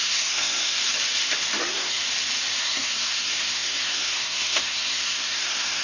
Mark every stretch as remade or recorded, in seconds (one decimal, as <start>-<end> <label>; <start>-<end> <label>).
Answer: 0.0-0.8 remade; 0.8-1.6 recorded; 1.6-2.0 remade; 2.0-2.6 recorded; 2.6-5.8 remade